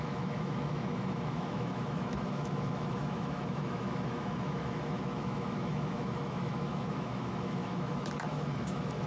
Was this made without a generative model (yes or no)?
no